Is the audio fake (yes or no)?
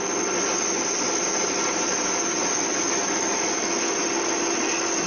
no